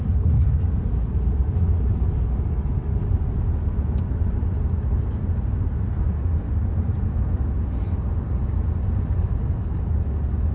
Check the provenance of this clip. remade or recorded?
recorded